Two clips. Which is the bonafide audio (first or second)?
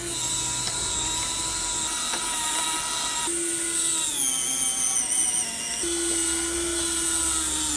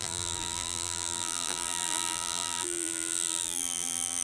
first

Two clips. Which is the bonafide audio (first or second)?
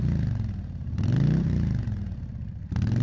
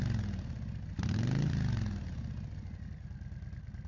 second